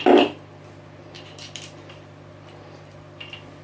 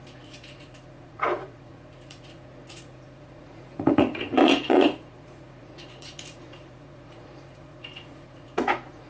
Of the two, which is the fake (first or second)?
second